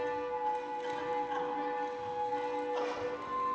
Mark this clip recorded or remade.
recorded